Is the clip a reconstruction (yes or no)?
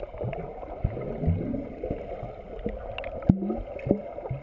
no